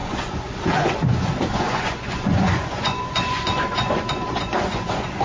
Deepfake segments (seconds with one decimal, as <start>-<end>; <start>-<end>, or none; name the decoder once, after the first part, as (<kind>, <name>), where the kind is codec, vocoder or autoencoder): 0.0-5.2 (vocoder, Vocos)

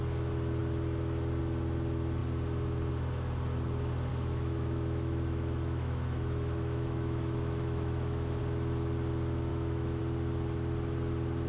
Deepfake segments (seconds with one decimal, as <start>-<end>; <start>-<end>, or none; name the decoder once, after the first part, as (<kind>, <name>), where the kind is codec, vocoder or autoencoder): 4.1-8.4 (autoencoder, DAC-VAE); 9.5-10.0

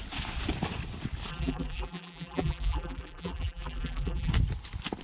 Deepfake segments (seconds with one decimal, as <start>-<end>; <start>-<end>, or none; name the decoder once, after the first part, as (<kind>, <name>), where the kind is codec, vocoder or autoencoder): 1.3-4.3 (vocoder, BigVGAN v2)

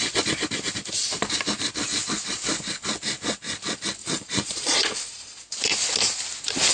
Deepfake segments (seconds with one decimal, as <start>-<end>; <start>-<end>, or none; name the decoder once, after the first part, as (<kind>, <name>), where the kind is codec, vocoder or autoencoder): 4.0-5.4 (vocoder, Vocos)